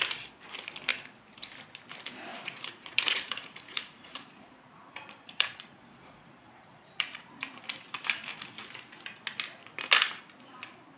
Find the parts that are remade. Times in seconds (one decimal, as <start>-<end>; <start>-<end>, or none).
2.3-7.6

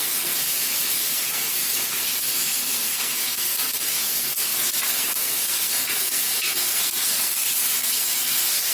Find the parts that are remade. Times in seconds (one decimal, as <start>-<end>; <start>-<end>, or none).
0.0-8.7

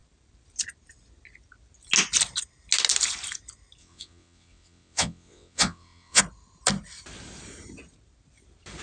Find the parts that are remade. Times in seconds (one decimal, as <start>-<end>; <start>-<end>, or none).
3.8-6.2

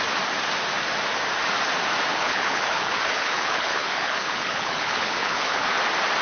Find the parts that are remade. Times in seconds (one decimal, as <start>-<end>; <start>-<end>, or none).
2.1-5.8

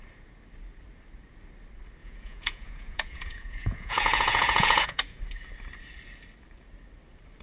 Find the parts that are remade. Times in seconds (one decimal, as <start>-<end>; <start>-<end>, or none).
2.0-5.2

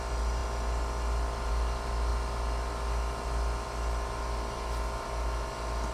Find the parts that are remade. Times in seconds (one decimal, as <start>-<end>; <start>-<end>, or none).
none